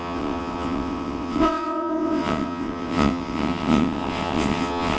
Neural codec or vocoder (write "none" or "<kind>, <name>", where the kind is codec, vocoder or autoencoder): vocoder, WaveNeXt